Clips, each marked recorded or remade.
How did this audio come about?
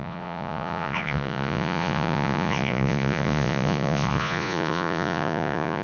remade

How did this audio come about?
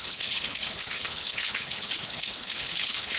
remade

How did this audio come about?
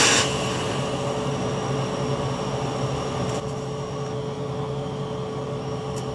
recorded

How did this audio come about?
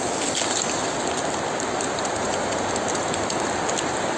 recorded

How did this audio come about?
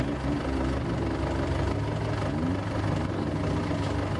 recorded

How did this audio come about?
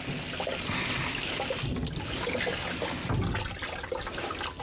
recorded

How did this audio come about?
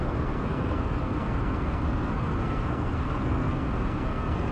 remade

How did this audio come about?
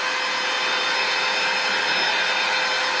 recorded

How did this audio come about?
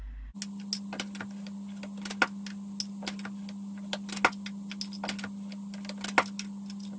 recorded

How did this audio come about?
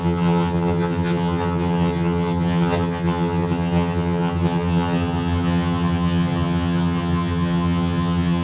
remade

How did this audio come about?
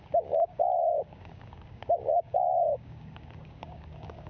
remade